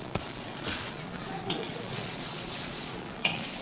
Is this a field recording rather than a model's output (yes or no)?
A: no